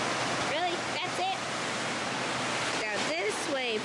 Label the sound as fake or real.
real